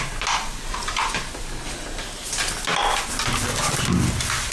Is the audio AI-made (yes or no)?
no